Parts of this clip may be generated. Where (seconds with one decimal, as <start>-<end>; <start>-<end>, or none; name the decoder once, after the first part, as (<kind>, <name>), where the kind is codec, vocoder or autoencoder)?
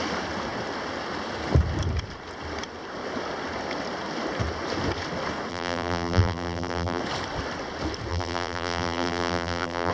5.5-7.0 (vocoder, BigVGAN v2); 8.1-9.9